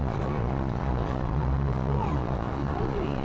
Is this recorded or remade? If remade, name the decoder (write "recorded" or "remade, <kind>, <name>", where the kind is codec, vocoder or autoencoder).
remade, vocoder, Vocos